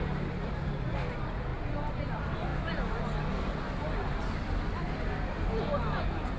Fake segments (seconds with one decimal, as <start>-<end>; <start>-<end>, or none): none